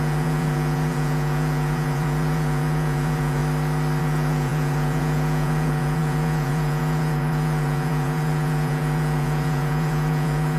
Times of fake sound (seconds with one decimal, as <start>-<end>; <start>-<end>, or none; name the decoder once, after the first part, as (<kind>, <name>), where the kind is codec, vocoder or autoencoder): 0.0-3.4 (vocoder, Vocos); 4.0-10.6